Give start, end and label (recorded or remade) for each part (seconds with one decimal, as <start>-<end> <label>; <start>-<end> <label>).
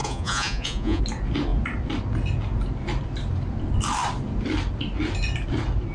0.0-1.0 remade; 1.0-5.9 recorded